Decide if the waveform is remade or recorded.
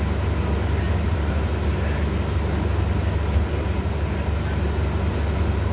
recorded